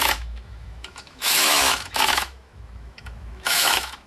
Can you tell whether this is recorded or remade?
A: remade